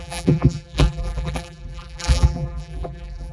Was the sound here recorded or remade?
remade